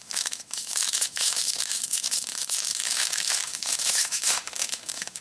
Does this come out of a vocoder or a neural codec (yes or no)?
yes